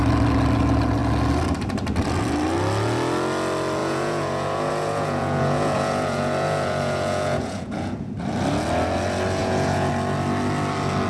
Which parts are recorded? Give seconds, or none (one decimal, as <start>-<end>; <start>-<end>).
0.0-3.8; 8.1-9.4; 9.9-11.1